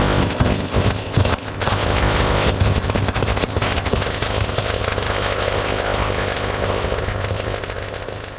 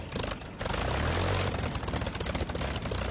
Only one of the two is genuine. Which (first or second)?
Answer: second